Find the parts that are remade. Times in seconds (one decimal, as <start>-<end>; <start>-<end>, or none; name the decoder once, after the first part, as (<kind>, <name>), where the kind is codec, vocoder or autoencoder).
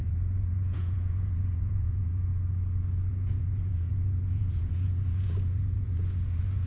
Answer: 0.0-2.3 (vocoder, Vocos); 3.0-6.7